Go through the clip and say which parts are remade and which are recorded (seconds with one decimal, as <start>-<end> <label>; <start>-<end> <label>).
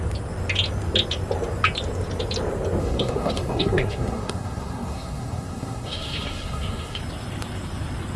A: 0.0-2.8 recorded; 2.8-7.0 remade; 7.0-8.2 recorded